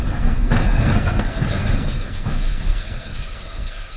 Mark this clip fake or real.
fake